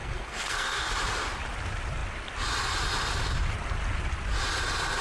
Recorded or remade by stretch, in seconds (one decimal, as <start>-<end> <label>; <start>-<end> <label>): 0.0-0.9 remade; 0.9-5.0 recorded

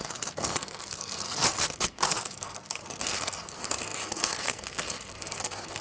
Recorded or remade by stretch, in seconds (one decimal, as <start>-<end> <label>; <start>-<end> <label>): 0.0-5.8 remade

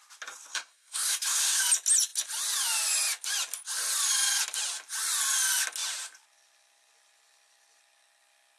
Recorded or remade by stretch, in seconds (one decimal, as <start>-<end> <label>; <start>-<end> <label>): 0.0-0.5 recorded; 0.5-1.6 remade; 1.6-8.6 recorded

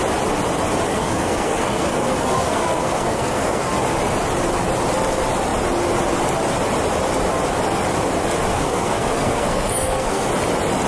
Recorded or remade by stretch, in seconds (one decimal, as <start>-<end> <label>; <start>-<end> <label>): 0.0-0.9 recorded; 0.9-3.7 remade; 3.7-8.5 recorded; 8.5-10.3 remade; 10.3-10.9 recorded

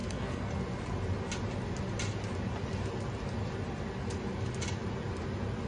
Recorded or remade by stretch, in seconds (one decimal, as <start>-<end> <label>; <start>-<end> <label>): 0.0-0.5 remade; 0.5-5.7 recorded